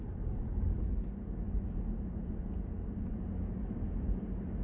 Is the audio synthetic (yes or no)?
no